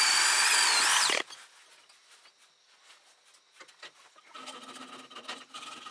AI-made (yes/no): no